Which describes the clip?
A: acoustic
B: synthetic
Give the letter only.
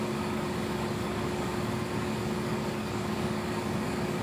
B